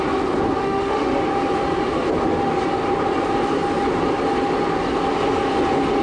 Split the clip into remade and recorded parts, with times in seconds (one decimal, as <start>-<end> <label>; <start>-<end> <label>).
0.0-0.6 recorded; 0.6-1.2 remade; 1.2-6.0 recorded